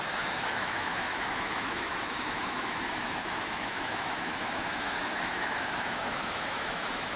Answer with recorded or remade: remade